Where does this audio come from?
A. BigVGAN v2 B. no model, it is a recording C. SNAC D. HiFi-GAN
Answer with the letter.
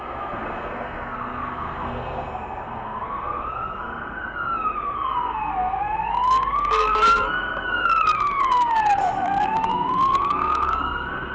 C